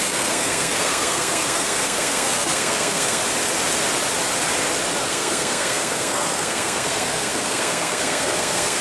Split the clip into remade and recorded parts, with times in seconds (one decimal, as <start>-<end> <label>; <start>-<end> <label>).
0.0-3.2 remade; 3.2-5.1 recorded; 5.1-8.8 remade